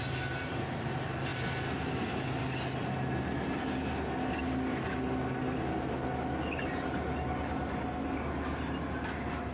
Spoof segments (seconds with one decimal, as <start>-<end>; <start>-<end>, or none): none